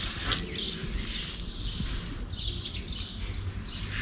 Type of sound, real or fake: real